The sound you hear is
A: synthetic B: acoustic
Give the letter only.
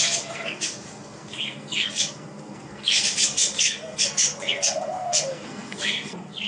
A